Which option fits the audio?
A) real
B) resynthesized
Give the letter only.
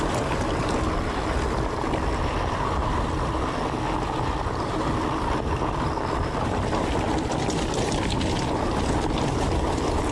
A